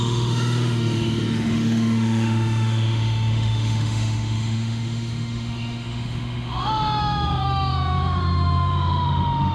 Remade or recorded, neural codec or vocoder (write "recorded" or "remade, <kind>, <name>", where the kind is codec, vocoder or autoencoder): remade, autoencoder, DAC-VAE